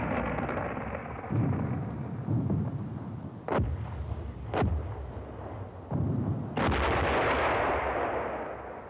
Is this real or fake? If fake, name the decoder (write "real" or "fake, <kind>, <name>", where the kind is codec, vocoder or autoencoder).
real